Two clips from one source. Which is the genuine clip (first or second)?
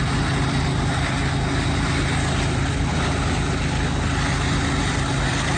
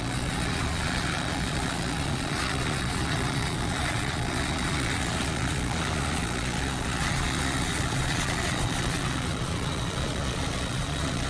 first